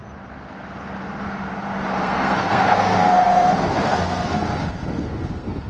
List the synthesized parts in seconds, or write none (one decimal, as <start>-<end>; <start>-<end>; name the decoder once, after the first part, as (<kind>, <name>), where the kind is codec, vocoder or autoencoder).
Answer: 2.0-5.7 (codec, SNAC)